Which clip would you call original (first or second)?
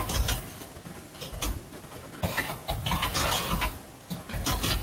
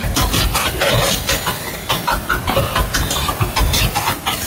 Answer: first